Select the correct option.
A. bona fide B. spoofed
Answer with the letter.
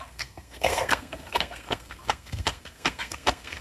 B